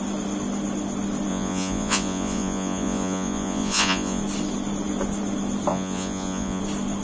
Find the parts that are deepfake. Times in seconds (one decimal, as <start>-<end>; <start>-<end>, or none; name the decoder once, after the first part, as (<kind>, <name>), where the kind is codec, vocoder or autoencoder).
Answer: 1.3-4.2 (vocoder, Vocos); 5.7-6.6